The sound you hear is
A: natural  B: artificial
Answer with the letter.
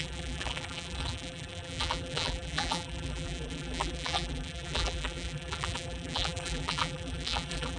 B